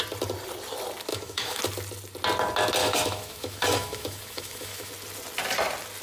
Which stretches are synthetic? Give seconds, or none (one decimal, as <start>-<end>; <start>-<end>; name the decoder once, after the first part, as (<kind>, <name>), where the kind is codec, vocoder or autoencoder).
1.1-1.6 (autoencoder, DAC-VAE); 2.8-4.9